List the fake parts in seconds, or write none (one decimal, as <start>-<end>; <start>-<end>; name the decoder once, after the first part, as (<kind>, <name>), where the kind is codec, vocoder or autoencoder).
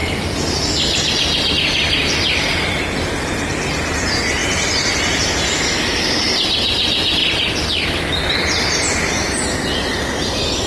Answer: none